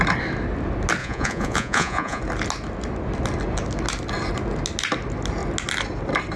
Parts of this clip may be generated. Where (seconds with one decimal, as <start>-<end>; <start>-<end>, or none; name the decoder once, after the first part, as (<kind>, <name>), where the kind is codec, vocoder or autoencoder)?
1.0-2.2 (vocoder, Vocos)